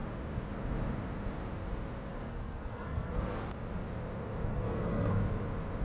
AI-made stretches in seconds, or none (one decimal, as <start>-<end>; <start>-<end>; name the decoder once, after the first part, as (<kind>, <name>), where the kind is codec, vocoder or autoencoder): 2.1-3.5 (codec, SNAC); 4.5-5.1